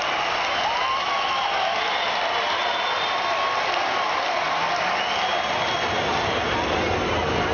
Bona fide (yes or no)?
yes